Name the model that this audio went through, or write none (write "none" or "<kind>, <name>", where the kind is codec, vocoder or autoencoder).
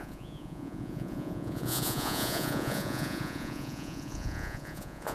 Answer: vocoder, Vocos